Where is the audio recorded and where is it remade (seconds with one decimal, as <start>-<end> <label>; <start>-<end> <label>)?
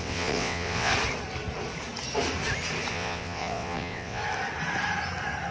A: 0.0-0.9 remade; 0.9-2.9 recorded; 2.9-4.2 remade; 4.2-5.5 recorded